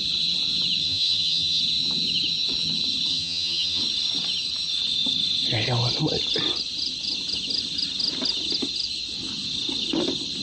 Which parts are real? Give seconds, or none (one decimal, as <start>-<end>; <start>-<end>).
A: 0.0-0.8; 1.6-3.1; 3.8-10.4